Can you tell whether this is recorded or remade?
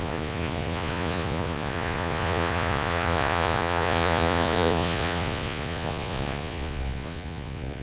remade